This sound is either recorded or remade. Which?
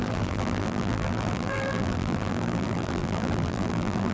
remade